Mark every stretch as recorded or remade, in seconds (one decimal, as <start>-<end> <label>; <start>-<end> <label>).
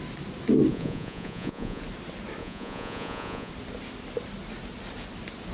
0.0-0.7 recorded; 0.7-1.8 remade; 1.8-2.4 recorded; 2.4-3.5 remade; 3.5-5.5 recorded